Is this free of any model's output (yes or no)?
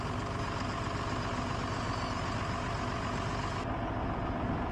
yes